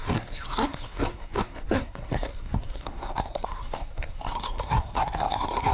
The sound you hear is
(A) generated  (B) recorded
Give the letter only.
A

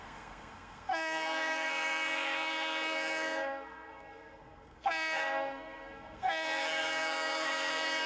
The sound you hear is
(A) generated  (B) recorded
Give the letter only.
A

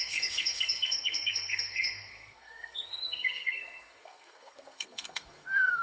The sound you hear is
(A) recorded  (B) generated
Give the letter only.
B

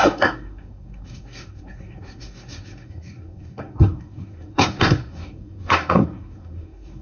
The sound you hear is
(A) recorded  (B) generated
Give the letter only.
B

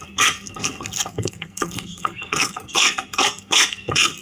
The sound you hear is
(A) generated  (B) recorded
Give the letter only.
A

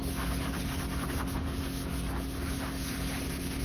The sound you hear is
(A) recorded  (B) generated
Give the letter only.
A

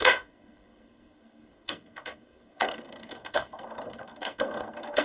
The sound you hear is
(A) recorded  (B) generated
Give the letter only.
B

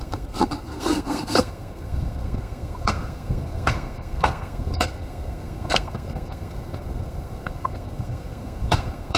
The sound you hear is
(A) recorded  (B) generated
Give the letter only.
B